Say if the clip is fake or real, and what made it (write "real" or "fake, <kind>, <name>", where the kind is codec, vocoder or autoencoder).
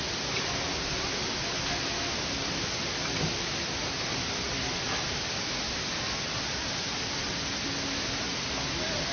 real